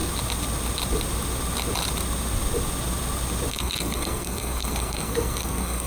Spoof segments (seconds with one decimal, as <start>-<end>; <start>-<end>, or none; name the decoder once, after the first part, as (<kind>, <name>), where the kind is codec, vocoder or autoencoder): 3.5-5.9 (codec, SNAC)